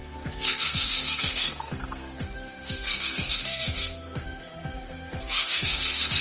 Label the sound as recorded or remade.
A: remade